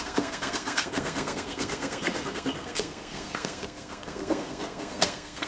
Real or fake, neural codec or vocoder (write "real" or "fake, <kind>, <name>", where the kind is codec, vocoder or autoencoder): fake, codec, SNAC